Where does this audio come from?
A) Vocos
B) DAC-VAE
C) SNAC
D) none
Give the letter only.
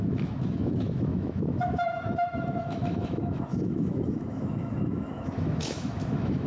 B